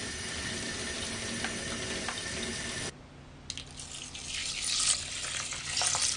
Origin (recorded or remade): recorded